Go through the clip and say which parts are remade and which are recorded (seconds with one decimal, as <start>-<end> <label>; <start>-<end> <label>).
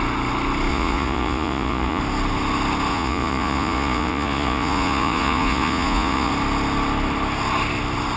0.0-0.7 recorded; 0.7-2.0 remade; 2.0-2.9 recorded; 2.9-6.3 remade; 6.3-8.2 recorded